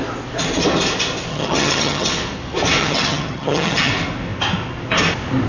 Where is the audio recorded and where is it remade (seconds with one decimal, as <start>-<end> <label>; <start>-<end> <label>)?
0.0-1.3 recorded; 1.3-2.1 remade; 2.1-2.8 recorded; 2.8-3.9 remade; 3.9-5.5 recorded